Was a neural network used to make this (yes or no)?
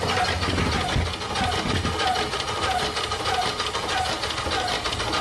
no